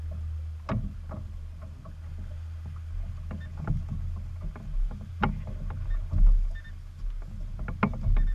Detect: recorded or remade recorded